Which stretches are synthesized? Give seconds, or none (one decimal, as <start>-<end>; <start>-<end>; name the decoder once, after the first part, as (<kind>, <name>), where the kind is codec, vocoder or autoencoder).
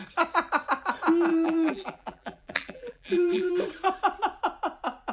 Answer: 1.3-3.5 (vocoder, BigVGAN v2)